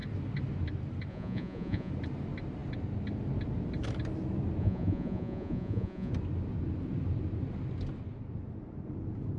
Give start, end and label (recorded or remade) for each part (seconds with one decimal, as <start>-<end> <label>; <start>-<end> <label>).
0.0-1.1 recorded; 1.1-1.9 remade; 1.9-4.6 recorded; 4.6-6.1 remade; 6.1-9.4 recorded